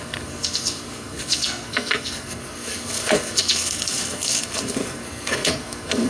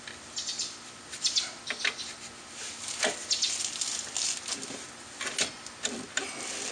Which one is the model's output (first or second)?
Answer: first